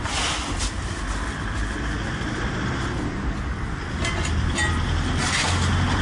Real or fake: real